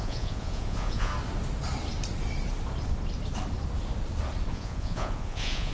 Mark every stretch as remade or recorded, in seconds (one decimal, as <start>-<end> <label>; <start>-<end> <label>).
0.0-1.1 remade; 1.1-4.5 recorded; 4.5-5.7 remade